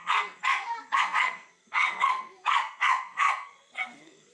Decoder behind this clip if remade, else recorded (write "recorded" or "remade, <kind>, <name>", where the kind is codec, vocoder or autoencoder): remade, codec, SNAC